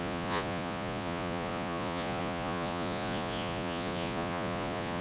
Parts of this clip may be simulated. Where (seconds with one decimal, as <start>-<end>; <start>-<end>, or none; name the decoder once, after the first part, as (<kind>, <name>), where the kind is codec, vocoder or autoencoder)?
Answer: 0.0-5.0 (vocoder, Vocos)